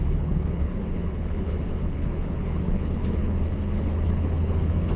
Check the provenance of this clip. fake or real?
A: fake